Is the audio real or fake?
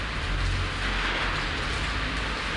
real